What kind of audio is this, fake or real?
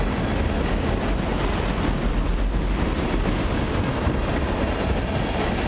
real